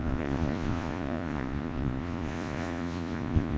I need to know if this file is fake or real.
fake